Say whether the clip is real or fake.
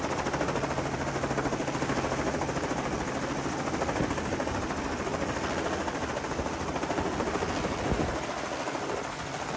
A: real